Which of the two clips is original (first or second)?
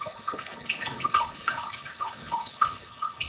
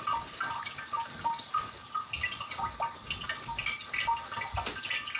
second